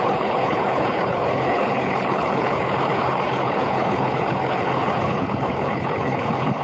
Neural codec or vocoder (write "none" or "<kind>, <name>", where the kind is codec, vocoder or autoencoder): codec, HILCodec